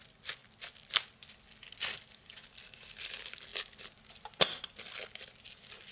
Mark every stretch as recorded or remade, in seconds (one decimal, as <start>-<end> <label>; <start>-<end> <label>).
0.0-5.9 recorded